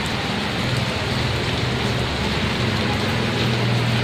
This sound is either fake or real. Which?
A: real